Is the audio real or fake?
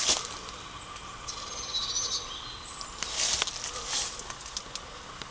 real